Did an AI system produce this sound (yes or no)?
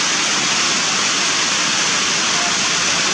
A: no